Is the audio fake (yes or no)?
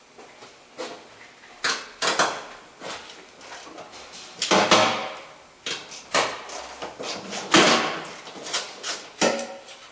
no